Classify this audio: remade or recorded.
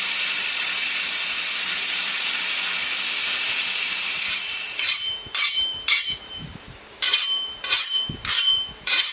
remade